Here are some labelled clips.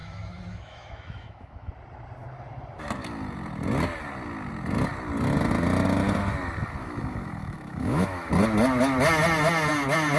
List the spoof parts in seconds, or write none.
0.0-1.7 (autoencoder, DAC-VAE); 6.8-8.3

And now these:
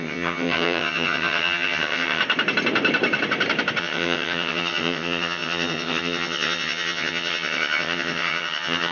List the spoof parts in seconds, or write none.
0.0-2.2 (vocoder, HiFi-GAN); 3.8-8.9

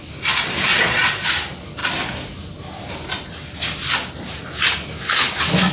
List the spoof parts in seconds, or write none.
0.7-1.3 (vocoder, Vocos)

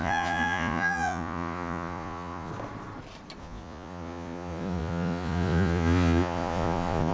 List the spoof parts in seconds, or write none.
0.0-2.5 (vocoder, Vocos); 3.4-7.1

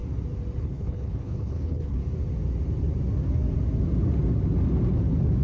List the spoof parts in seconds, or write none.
0.6-2.0 (codec, HILCodec)

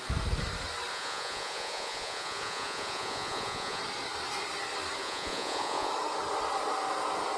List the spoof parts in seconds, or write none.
0.9-3.8 (vocoder, Vocos); 5.0-5.9

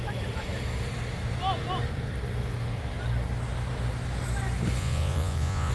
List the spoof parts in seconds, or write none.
4.8-5.7 (vocoder, Vocos)